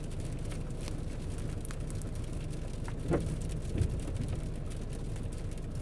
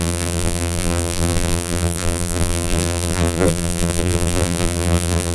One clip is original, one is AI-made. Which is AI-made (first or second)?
second